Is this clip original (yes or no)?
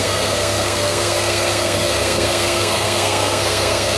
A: no